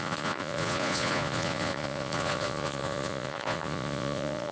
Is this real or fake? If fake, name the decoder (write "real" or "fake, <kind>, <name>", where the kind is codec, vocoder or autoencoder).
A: fake, vocoder, Vocos